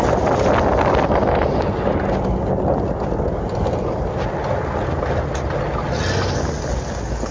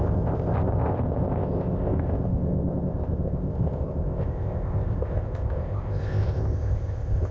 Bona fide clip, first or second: first